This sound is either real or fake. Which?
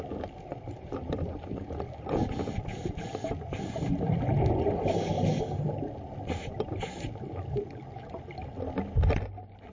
real